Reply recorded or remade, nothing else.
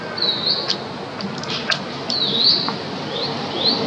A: recorded